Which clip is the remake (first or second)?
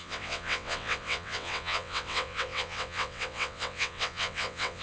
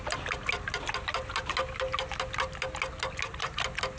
first